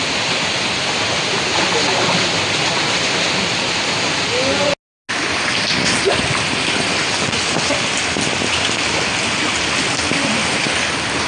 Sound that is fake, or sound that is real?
real